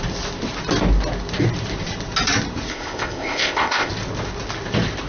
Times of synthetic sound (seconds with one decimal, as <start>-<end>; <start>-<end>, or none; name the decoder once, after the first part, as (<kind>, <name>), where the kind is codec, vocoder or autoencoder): 2.7-3.9 (codec, ZipCodec)